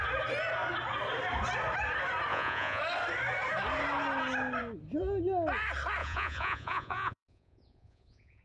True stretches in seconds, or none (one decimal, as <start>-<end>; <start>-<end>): 0.0-2.3; 2.8-6.0